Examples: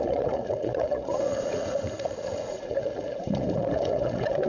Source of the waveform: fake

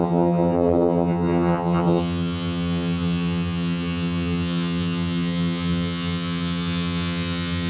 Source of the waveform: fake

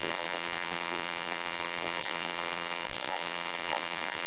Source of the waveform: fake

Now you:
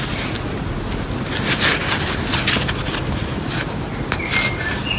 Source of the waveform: real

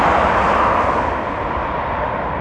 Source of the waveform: real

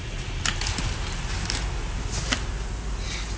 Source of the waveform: real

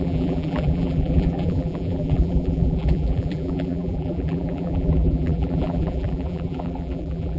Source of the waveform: fake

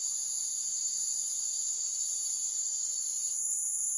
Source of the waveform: fake